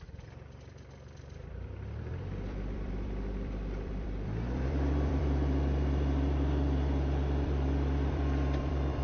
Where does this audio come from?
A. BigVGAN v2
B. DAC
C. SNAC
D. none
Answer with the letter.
A